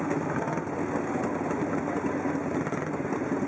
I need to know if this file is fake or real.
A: real